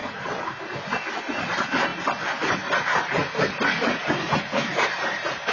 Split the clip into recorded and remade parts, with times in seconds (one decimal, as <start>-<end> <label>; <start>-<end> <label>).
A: 0.0-1.1 recorded; 1.1-1.9 remade; 1.9-2.4 recorded; 2.4-3.2 remade; 3.2-3.8 recorded; 3.8-5.5 remade